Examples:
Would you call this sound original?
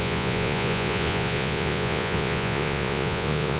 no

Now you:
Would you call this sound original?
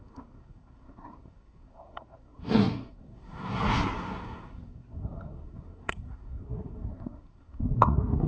no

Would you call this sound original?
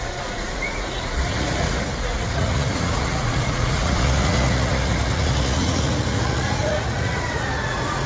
no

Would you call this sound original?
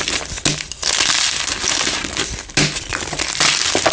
yes